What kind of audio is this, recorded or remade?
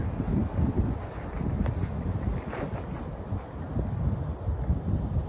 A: recorded